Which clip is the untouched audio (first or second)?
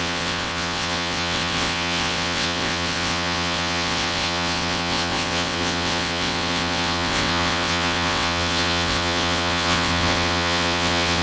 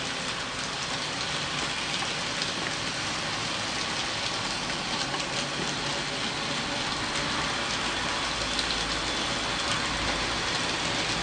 second